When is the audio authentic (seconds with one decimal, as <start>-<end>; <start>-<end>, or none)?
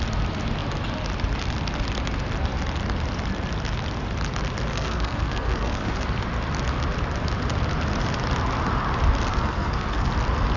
0.0-4.7; 6.0-9.3; 10.1-10.6